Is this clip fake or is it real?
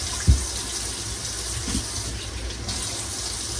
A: real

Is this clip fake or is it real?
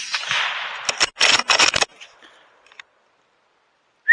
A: real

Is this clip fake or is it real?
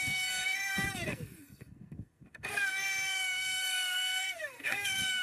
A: fake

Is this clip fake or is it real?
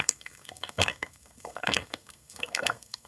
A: fake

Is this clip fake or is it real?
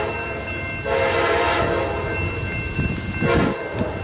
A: real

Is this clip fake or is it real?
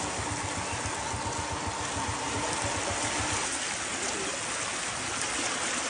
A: real